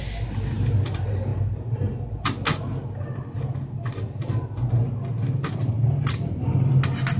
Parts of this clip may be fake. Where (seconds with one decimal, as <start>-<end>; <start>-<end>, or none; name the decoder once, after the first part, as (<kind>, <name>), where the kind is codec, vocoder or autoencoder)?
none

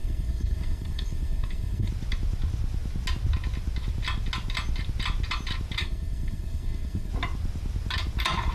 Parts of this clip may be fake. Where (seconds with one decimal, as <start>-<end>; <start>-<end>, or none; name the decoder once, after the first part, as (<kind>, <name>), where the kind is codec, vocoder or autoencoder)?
0.0-1.9 (codec, SNAC); 5.8-7.1

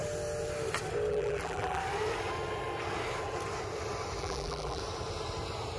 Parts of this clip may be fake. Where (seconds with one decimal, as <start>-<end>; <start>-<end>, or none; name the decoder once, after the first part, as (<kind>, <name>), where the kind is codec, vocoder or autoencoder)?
1.1-1.8 (vocoder, BigVGAN v2); 4.2-4.8

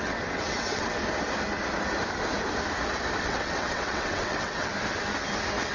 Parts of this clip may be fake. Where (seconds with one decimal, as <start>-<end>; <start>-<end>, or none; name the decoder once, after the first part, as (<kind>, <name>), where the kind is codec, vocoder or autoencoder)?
0.0-1.0 (vocoder, WaveNeXt); 3.2-4.7

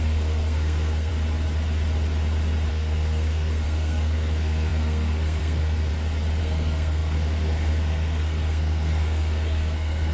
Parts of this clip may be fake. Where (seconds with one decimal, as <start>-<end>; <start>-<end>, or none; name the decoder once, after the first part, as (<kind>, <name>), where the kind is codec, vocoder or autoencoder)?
0.0-1.1 (codec, SNAC); 2.7-5.9; 6.4-10.1

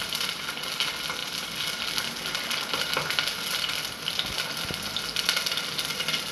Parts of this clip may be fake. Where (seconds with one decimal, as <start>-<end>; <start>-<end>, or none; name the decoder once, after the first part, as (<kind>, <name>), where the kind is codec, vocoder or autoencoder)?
none